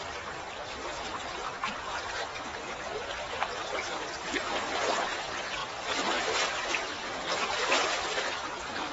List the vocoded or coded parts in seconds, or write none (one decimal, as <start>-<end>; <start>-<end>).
none